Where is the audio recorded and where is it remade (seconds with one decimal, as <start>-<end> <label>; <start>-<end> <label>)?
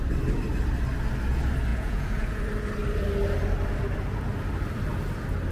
0.0-1.7 recorded; 1.7-2.4 remade; 2.4-5.5 recorded